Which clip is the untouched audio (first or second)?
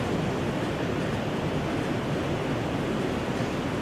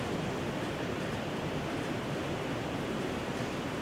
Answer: first